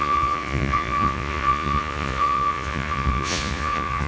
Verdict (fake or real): fake